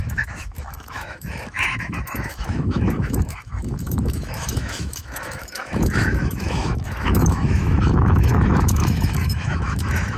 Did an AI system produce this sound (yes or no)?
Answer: yes